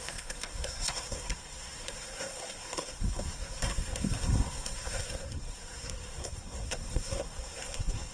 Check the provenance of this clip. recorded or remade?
remade